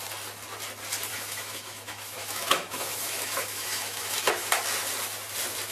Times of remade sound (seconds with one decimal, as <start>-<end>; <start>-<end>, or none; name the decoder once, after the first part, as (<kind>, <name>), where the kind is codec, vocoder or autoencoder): 1.1-4.5 (autoencoder, DAC-VAE)